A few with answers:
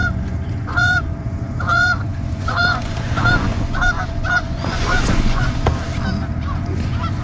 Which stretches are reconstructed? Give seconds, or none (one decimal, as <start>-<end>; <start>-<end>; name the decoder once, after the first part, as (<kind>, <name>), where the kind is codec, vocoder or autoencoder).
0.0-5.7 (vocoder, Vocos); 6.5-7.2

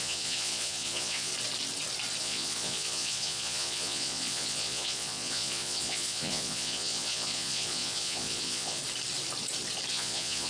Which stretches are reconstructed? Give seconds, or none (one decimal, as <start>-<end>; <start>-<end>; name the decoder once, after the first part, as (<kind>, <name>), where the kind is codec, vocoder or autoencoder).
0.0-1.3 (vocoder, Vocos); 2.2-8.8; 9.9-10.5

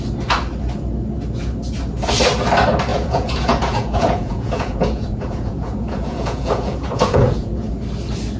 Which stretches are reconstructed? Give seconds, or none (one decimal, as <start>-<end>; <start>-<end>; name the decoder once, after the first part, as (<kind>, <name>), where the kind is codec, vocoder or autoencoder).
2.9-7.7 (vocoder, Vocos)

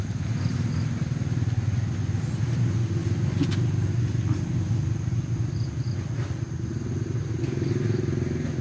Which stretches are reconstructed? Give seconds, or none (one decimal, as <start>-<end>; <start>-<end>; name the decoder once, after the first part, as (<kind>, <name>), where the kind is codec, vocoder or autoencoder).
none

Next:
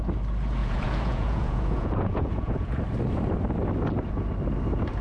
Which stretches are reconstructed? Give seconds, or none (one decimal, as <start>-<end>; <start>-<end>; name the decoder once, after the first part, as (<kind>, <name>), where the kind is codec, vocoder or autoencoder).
0.6-2.8 (vocoder, Vocos)

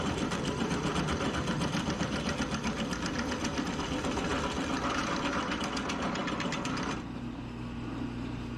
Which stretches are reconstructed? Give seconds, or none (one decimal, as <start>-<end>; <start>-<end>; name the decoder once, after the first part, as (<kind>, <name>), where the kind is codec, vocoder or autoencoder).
none